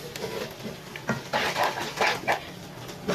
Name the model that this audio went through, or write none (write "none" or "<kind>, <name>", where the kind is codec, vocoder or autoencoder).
none